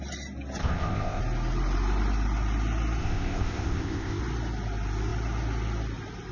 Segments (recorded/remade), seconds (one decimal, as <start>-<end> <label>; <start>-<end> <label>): 0.0-0.6 recorded; 0.6-1.2 remade; 1.2-3.0 recorded; 3.0-4.2 remade; 4.2-6.3 recorded